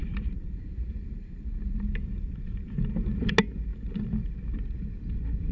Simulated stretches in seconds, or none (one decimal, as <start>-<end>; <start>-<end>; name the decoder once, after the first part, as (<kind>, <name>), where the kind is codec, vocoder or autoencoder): 0.0-3.3 (vocoder, BigVGAN v2); 3.7-4.3